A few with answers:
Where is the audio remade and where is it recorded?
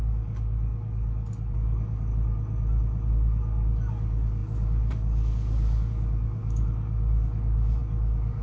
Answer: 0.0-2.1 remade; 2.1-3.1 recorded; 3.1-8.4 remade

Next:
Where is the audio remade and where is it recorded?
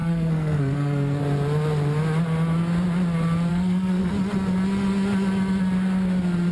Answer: 0.0-1.2 remade; 1.2-3.5 recorded; 3.5-4.1 remade; 4.1-6.5 recorded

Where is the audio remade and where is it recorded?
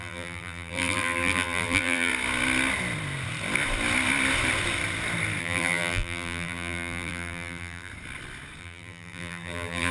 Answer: 0.0-2.1 remade; 2.1-5.4 recorded; 5.4-7.9 remade; 7.9-8.6 recorded; 8.6-9.9 remade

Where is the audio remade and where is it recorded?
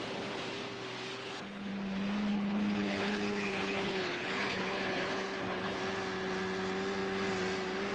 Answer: 0.0-1.1 recorded; 1.1-1.7 remade; 1.7-2.3 recorded; 2.3-5.8 remade; 5.8-7.9 recorded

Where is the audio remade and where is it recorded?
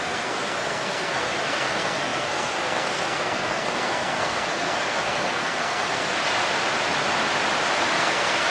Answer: 0.0-6.2 remade; 6.2-7.9 recorded; 7.9-8.5 remade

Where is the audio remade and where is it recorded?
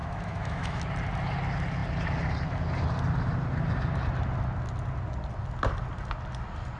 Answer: 0.0-0.8 remade; 0.8-6.8 recorded